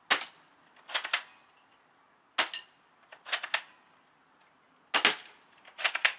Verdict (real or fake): real